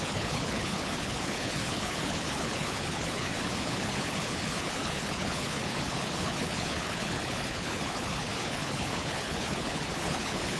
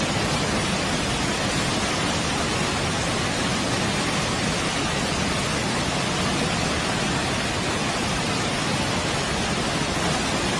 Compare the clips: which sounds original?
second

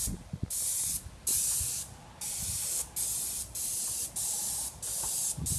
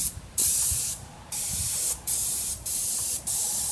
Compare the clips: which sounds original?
first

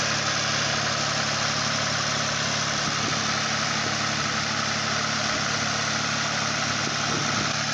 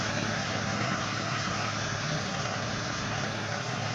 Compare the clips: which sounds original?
first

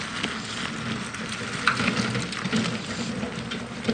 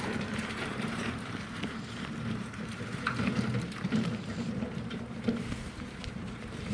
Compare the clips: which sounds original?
first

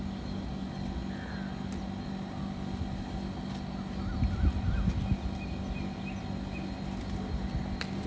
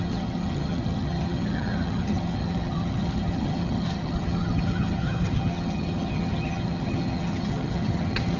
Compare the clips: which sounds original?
first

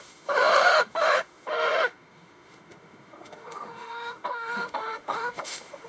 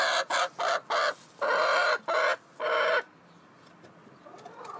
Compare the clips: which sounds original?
second